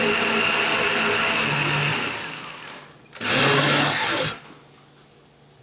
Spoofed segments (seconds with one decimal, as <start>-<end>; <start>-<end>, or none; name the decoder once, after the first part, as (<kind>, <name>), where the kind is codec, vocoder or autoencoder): none